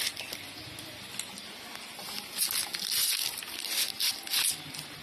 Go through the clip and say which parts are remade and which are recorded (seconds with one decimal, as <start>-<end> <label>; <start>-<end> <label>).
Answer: 0.0-5.0 recorded